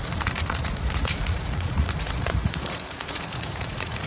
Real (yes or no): no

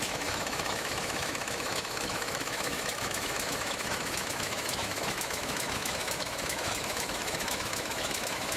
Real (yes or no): no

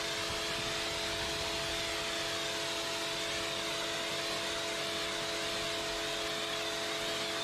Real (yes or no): yes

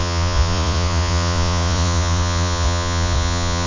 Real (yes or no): no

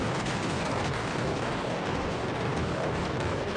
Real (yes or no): no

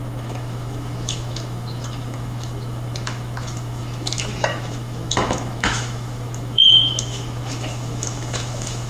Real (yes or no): no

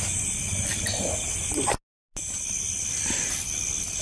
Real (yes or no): yes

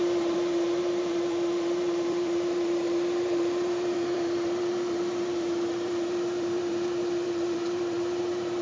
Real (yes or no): no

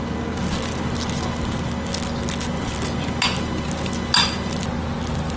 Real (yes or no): yes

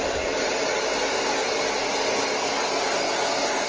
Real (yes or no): yes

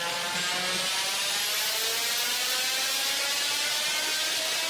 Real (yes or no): yes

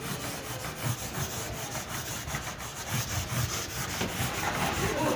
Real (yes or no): yes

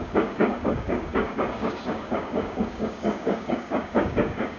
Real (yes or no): no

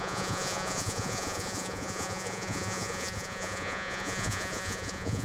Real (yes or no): no